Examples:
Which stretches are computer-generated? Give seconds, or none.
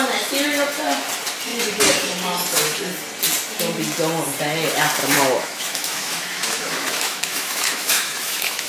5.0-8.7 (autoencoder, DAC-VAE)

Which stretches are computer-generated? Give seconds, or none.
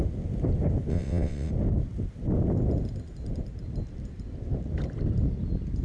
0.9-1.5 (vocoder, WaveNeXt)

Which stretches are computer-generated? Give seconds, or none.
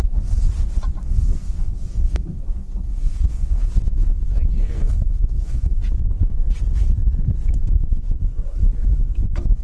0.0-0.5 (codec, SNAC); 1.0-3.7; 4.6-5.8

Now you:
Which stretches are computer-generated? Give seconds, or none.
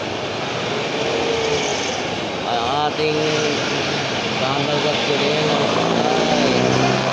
none